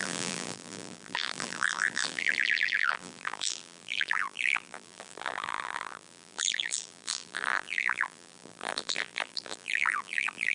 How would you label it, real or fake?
fake